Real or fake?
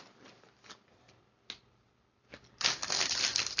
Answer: real